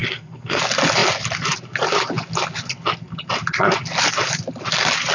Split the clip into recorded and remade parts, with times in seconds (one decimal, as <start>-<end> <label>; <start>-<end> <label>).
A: 0.0-0.6 remade; 0.6-5.1 recorded